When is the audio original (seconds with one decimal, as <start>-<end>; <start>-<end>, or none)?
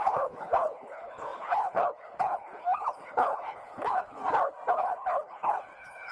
4.2-4.7